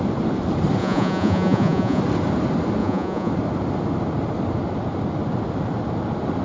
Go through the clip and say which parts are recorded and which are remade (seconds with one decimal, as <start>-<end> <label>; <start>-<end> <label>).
0.0-0.8 recorded; 0.8-2.0 remade; 2.0-2.8 recorded; 2.8-3.3 remade; 3.3-6.4 recorded